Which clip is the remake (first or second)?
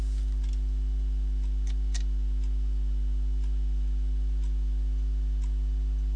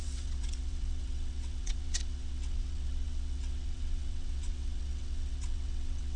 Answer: second